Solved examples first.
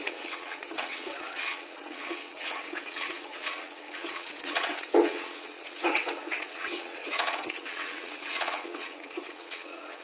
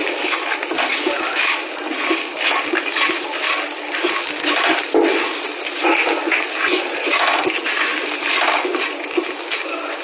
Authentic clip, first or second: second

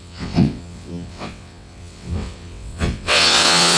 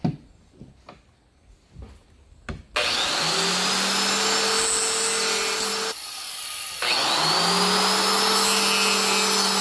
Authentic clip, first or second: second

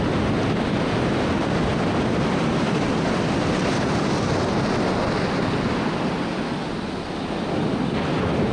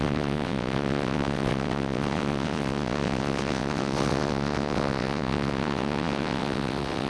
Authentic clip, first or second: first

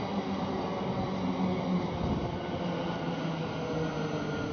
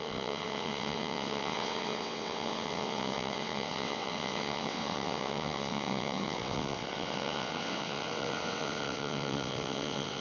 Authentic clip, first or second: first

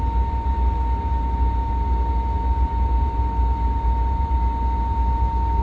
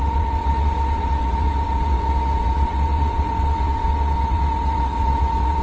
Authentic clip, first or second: first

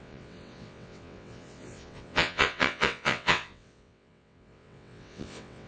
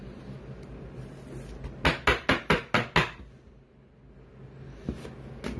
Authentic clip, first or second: second